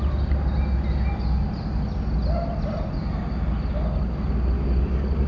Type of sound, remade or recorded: recorded